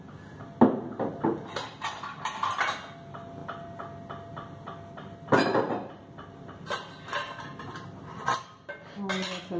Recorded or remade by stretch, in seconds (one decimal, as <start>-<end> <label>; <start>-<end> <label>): 0.0-9.6 recorded